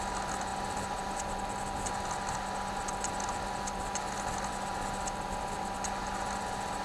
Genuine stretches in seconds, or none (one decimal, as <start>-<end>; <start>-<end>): 0.0-6.8